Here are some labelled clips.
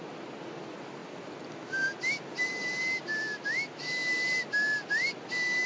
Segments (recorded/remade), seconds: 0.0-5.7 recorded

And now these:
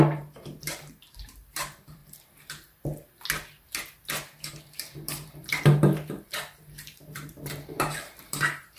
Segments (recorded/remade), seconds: 0.0-2.0 remade; 2.0-4.6 recorded; 4.6-8.8 remade

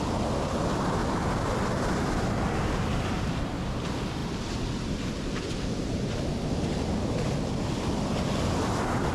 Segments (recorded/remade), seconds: 0.0-9.1 recorded

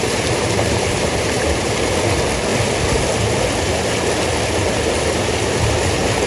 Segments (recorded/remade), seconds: 0.0-1.9 remade; 1.9-6.3 recorded

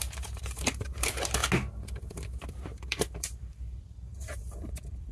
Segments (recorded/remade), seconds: 0.0-1.4 remade; 1.4-2.5 recorded; 2.5-5.1 remade